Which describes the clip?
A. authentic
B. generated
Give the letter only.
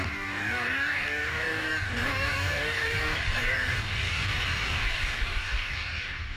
B